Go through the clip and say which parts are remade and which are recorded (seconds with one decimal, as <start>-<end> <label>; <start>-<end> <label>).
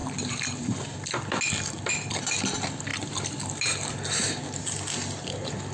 0.0-5.7 recorded